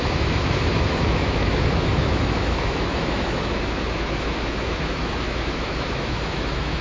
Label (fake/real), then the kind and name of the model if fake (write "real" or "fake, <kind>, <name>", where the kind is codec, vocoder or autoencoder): fake, autoencoder, DAC-VAE